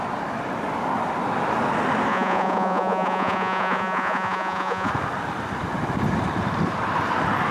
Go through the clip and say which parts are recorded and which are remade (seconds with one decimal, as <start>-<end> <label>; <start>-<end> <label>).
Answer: 0.0-2.1 recorded; 2.1-4.9 remade; 4.9-7.5 recorded